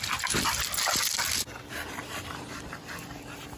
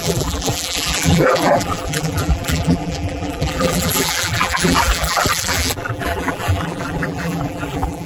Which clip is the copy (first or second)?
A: second